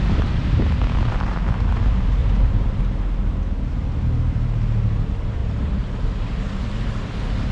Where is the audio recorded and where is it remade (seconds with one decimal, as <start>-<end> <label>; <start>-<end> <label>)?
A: 0.0-2.2 recorded; 2.2-2.8 remade; 2.8-5.4 recorded; 5.4-6.9 remade; 6.9-7.5 recorded

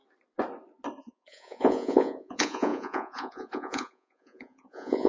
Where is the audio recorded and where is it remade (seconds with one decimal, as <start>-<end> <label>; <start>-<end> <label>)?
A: 0.0-1.0 recorded; 1.0-5.1 remade

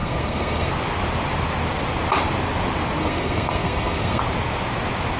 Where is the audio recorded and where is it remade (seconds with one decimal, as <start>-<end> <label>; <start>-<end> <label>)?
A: 0.0-0.7 remade; 0.7-3.0 recorded; 3.0-4.2 remade; 4.2-5.2 recorded